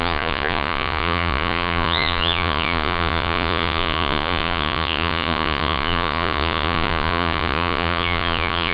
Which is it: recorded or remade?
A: remade